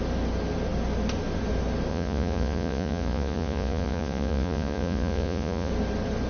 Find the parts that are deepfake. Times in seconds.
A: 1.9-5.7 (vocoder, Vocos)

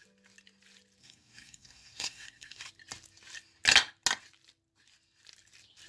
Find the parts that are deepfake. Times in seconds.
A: 1.0-2.7 (codec, SNAC)

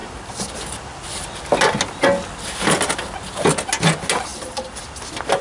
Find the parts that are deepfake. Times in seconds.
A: none